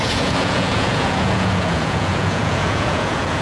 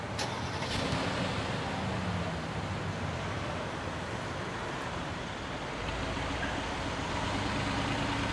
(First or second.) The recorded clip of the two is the second